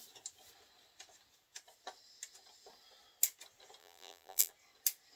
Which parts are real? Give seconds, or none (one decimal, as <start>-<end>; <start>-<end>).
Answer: 0.0-3.8; 4.5-5.2